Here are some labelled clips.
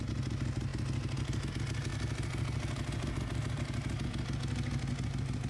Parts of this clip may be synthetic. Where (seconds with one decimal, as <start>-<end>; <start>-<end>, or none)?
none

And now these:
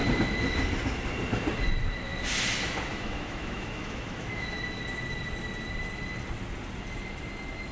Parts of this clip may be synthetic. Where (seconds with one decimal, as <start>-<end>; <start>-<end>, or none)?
2.9-4.8

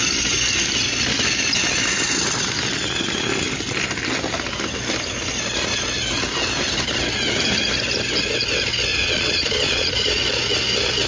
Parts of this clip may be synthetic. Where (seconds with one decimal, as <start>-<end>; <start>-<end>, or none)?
8.9-10.2

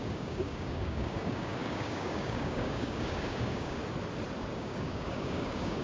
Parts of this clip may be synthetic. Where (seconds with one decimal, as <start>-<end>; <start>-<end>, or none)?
0.0-3.8; 4.5-5.8

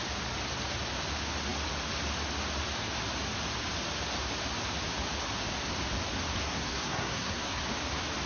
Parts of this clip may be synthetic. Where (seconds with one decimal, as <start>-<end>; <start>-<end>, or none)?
6.4-7.6

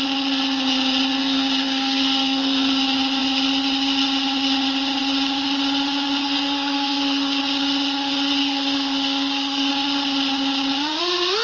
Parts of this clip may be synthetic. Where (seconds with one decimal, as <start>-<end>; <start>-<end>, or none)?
1.2-2.7; 6.2-7.4; 8.4-9.7